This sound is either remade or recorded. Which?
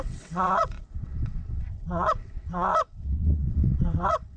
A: remade